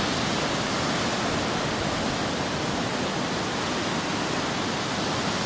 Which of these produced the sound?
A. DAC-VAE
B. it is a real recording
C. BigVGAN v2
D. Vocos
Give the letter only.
B